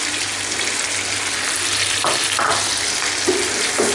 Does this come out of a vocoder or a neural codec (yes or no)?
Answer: no